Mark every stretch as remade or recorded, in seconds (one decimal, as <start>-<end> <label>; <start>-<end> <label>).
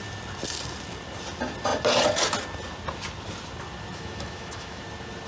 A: 0.0-3.9 recorded; 3.9-4.8 remade; 4.8-5.3 recorded